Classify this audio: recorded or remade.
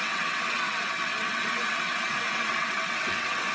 remade